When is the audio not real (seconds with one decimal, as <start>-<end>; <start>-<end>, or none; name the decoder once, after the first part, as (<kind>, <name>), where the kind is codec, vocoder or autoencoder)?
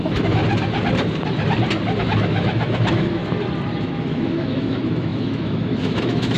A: 0.0-0.4 (autoencoder, DAC-VAE); 2.0-3.2; 3.8-6.4